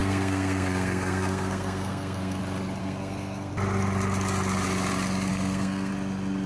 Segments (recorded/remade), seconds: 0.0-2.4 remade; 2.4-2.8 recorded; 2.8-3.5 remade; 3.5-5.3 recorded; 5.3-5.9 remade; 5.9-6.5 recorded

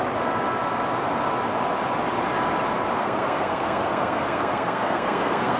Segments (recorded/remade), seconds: 0.0-3.0 recorded; 3.0-5.6 remade